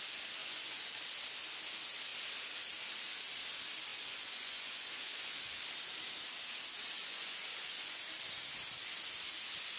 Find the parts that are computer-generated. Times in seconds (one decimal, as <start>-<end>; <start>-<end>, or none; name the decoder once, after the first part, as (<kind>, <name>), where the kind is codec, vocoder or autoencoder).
0.4-0.9 (vocoder, Vocos); 3.9-5.4; 7.0-8.0